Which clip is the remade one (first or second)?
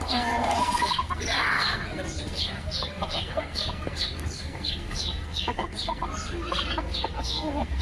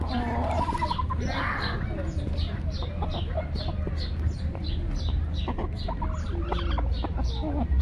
first